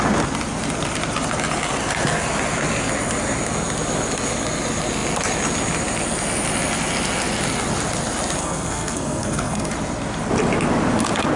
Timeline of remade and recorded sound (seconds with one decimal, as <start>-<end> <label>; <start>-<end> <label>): 0.0-8.4 recorded; 8.4-9.7 remade; 9.7-11.4 recorded